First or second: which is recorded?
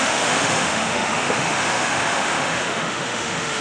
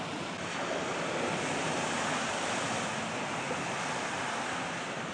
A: second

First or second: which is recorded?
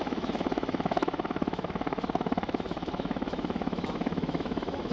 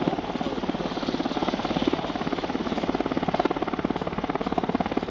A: second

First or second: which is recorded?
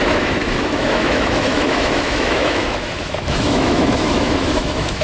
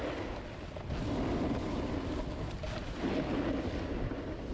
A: second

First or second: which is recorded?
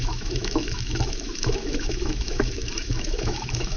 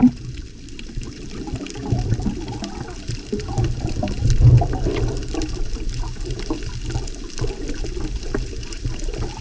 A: second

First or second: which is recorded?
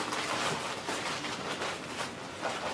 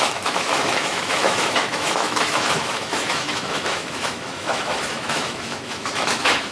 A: first